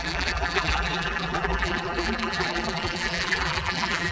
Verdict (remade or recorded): remade